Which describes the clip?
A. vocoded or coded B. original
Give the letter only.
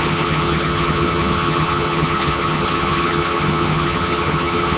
A